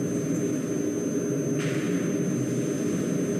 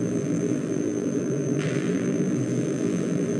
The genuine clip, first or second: first